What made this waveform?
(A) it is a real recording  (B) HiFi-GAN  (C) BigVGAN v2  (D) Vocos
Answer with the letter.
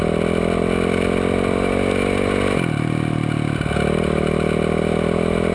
A